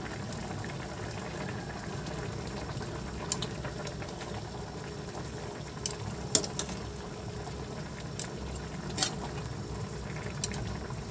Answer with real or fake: real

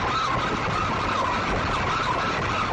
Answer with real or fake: real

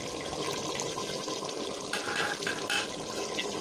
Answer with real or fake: real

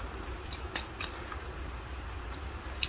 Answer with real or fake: real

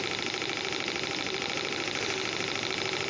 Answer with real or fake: real